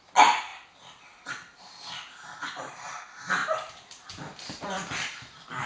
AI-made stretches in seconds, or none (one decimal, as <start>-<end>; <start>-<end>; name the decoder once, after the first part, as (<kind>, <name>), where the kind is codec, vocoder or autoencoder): 0.5-1.8 (vocoder, BigVGAN v2); 3.4-4.9